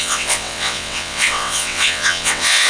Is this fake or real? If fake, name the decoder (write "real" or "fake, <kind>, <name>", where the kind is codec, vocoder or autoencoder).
fake, vocoder, WaveNeXt